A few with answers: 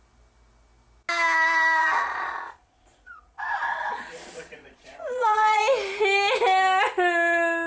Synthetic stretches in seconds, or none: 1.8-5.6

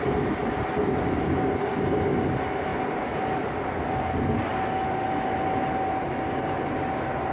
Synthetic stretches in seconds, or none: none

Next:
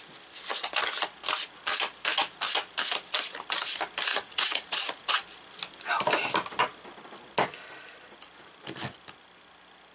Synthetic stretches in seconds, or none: 4.1-5.1

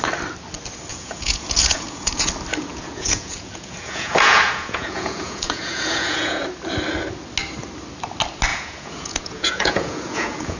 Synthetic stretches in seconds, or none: 0.9-2.3; 2.7-6.4; 8.5-10.6

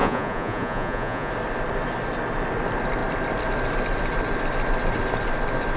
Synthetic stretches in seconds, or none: 0.0-1.3